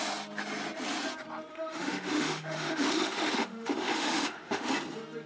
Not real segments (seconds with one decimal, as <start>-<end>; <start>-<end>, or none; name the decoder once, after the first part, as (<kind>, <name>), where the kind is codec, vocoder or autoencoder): 1.5-4.7 (autoencoder, DAC-VAE)